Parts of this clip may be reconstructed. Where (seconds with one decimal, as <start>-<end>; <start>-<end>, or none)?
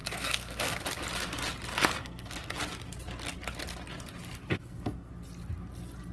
0.0-0.8; 1.7-2.5; 4.5-5.1